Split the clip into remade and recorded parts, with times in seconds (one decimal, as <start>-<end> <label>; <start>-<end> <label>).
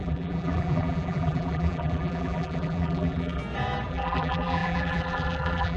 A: 0.0-3.4 remade; 3.4-3.9 recorded; 3.9-5.8 remade